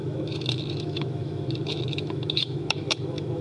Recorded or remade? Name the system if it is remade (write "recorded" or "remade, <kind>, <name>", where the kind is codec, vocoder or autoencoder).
remade, autoencoder, DAC-VAE